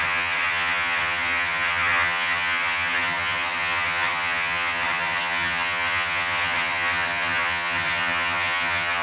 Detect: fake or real fake